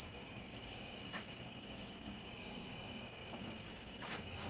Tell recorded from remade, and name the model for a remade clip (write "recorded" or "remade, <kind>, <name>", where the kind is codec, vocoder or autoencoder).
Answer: remade, codec, DAC